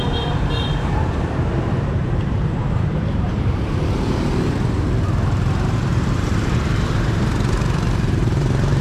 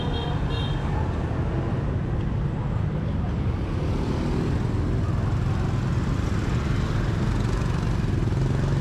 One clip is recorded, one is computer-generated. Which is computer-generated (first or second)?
first